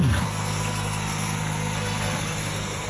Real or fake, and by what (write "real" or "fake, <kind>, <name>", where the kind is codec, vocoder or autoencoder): fake, codec, SNAC